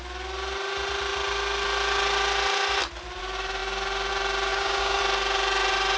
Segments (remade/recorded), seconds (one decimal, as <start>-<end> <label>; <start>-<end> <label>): 0.0-4.5 recorded; 4.5-5.0 remade; 5.0-6.0 recorded